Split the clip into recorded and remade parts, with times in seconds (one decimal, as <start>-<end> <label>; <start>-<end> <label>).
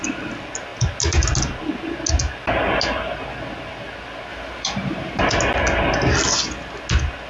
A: 0.0-4.3 recorded; 4.3-5.3 remade; 5.3-7.3 recorded